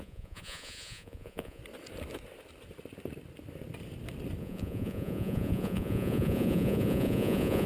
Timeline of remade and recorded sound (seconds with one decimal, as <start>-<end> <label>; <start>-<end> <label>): 0.0-1.6 remade; 1.6-4.4 recorded; 4.4-7.7 remade